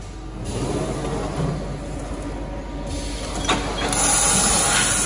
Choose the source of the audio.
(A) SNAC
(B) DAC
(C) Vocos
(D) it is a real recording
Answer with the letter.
D